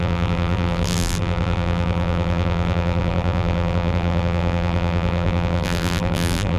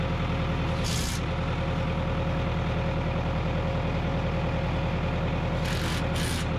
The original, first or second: second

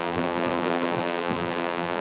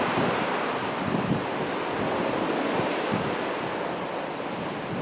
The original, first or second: second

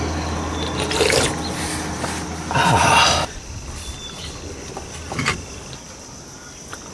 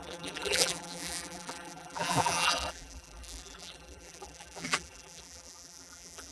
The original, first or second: first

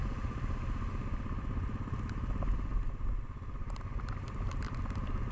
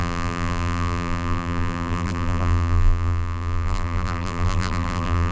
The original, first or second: first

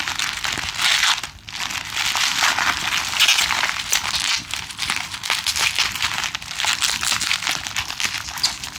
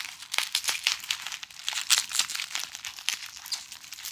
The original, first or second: first